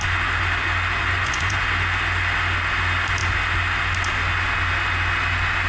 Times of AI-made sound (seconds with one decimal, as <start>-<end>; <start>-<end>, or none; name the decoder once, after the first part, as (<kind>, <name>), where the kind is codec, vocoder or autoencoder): 1.0-1.6 (vocoder, Vocos)